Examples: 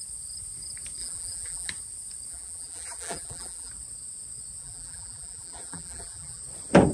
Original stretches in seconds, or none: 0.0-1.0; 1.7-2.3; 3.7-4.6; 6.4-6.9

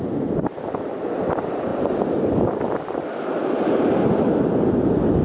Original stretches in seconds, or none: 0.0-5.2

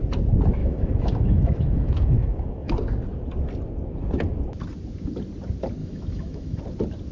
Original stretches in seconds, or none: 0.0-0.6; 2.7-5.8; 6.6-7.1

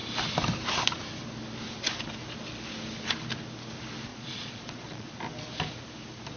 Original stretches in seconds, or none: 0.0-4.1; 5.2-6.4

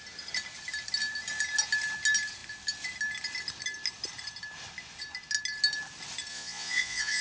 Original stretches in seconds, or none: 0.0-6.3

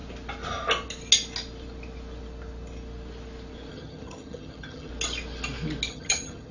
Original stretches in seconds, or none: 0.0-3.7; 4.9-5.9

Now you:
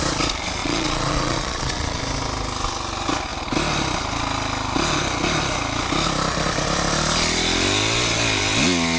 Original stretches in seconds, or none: 0.0-0.6; 2.0-9.0

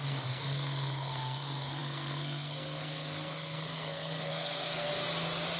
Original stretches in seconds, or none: 4.9-5.6